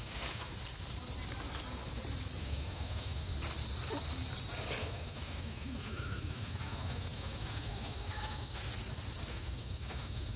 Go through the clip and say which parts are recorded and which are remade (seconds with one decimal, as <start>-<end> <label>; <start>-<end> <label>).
0.0-0.5 remade; 0.5-2.4 recorded; 2.4-3.3 remade; 3.3-4.8 recorded; 4.8-8.7 remade; 8.7-9.3 recorded; 9.3-10.4 remade